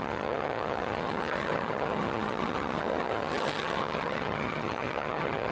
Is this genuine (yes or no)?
no